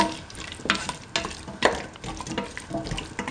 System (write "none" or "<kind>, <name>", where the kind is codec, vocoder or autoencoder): none